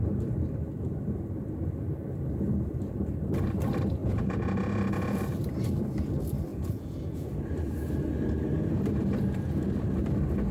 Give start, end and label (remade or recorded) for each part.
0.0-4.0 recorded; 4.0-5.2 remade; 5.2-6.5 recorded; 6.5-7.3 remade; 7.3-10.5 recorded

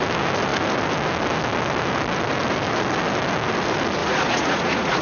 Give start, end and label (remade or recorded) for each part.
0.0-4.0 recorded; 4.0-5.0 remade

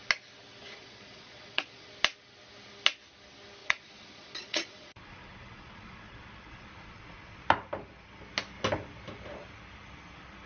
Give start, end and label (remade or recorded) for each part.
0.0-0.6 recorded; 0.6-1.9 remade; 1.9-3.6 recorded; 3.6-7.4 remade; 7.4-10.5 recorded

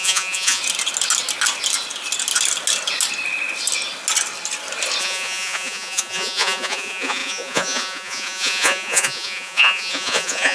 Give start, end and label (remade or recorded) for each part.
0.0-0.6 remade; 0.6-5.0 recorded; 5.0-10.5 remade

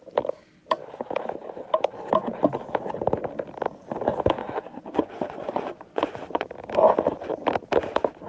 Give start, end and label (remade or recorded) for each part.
0.0-4.4 recorded; 4.4-6.5 remade; 6.5-8.3 recorded